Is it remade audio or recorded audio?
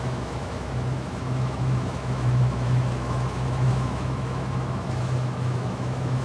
remade